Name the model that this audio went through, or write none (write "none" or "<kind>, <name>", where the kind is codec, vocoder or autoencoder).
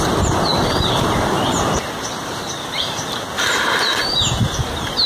none